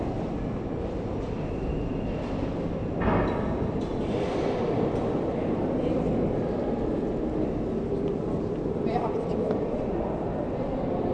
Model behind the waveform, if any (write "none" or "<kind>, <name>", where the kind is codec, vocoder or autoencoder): none